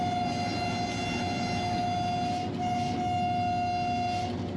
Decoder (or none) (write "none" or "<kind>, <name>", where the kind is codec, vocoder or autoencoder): none